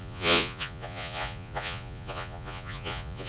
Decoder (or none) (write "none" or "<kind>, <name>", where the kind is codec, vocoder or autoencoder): vocoder, Vocos